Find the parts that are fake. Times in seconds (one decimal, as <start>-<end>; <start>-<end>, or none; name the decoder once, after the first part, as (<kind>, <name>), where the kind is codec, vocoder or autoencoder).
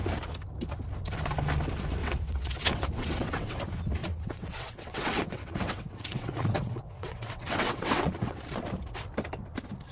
2.0-3.6 (vocoder, WaveNeXt); 4.0-8.4